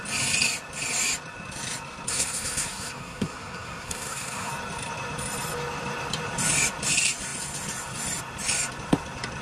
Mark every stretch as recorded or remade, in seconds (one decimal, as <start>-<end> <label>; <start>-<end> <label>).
0.0-2.1 recorded; 2.1-4.5 remade; 4.5-9.4 recorded